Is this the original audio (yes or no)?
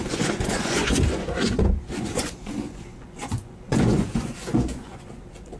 no